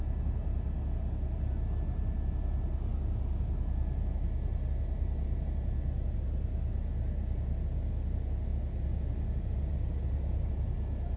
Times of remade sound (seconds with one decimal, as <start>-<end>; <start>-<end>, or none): none